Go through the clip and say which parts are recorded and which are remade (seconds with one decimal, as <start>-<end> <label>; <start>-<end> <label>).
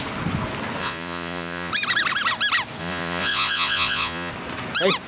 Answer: 0.0-0.8 recorded; 0.8-1.7 remade; 1.7-2.8 recorded; 2.8-4.3 remade; 4.3-5.1 recorded